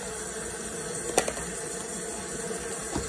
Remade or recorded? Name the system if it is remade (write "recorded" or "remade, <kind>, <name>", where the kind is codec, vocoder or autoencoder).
recorded